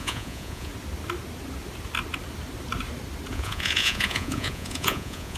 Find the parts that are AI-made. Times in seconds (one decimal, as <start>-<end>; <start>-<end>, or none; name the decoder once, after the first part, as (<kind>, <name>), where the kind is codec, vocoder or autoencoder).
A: 0.0-0.7 (vocoder, Vocos); 3.3-5.4